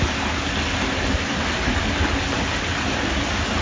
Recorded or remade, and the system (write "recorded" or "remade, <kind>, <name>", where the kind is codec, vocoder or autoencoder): recorded